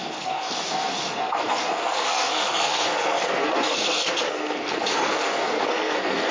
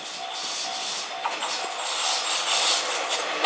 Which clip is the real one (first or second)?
second